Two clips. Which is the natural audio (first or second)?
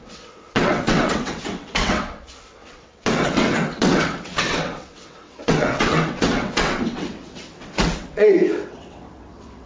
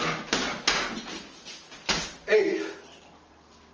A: second